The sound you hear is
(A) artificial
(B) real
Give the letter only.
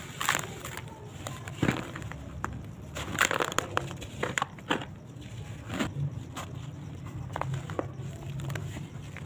B